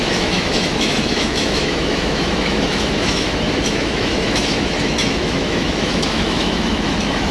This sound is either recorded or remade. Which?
remade